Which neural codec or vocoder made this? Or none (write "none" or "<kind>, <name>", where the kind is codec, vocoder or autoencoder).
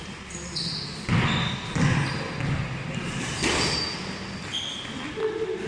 none